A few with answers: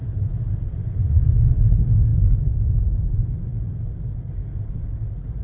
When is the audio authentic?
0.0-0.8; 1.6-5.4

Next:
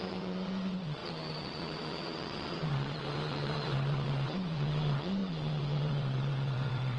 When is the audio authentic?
none